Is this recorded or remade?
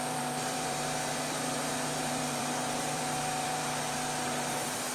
remade